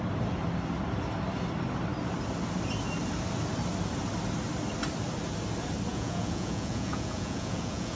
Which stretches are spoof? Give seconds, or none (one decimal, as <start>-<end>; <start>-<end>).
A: 5.9-8.0